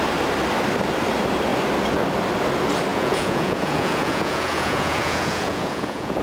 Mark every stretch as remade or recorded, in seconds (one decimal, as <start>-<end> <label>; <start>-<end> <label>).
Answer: 0.0-2.9 recorded; 2.9-6.2 remade